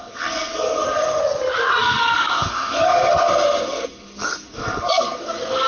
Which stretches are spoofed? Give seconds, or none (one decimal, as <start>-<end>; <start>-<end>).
0.0-1.2; 1.8-5.7